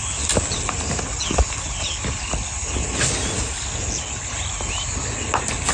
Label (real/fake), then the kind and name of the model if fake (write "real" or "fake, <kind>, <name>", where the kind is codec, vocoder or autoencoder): real